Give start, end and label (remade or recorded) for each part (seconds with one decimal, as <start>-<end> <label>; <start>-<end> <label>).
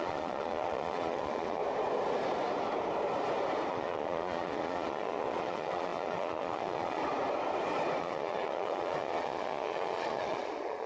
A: 0.0-1.6 remade; 1.6-3.7 recorded; 3.7-7.0 remade; 7.0-8.0 recorded; 8.0-10.9 remade